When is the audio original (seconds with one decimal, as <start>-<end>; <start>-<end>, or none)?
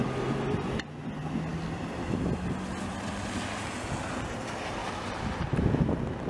0.0-4.8; 5.4-6.3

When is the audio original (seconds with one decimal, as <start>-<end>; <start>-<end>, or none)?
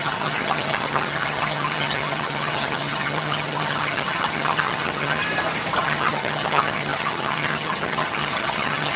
5.2-5.8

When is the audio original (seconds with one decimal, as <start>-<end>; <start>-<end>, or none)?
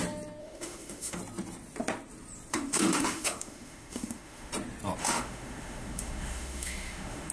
0.0-0.4; 1.2-2.5; 4.5-5.0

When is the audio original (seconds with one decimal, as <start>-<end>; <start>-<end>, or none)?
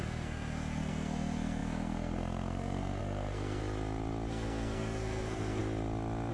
3.6-4.3; 5.6-6.3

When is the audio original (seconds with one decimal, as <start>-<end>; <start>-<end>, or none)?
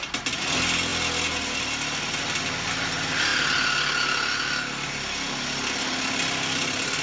0.0-7.0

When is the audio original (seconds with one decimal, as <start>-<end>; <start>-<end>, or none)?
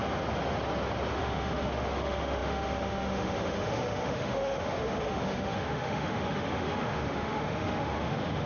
0.0-1.1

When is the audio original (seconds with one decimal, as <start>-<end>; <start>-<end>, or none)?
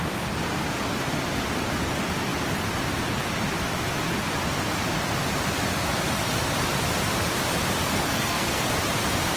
0.0-7.8; 8.7-9.4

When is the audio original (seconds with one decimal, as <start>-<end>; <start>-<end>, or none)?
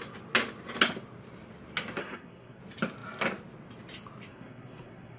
0.0-2.0; 2.6-4.3